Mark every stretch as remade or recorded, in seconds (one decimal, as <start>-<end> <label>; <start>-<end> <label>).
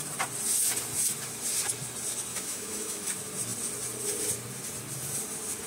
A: 0.0-2.3 recorded; 2.3-3.1 remade; 3.1-5.7 recorded